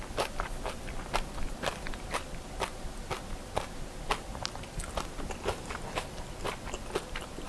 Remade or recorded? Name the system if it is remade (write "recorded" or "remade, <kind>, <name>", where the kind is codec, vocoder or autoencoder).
recorded